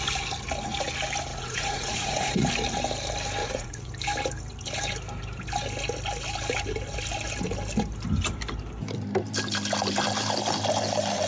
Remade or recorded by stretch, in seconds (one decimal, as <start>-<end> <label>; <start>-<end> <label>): 0.0-1.3 recorded; 1.3-2.5 remade; 2.5-3.4 recorded; 3.4-3.9 remade; 3.9-11.3 recorded